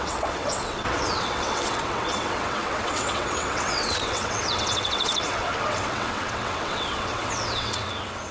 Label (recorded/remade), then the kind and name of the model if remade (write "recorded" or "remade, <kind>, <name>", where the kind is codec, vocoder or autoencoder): remade, vocoder, WaveNeXt